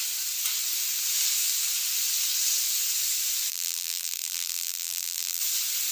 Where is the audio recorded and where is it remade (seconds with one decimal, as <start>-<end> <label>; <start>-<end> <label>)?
0.0-3.5 recorded; 3.5-5.4 remade; 5.4-5.9 recorded